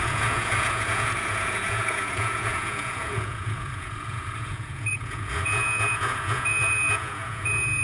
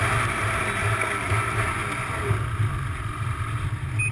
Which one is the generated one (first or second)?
first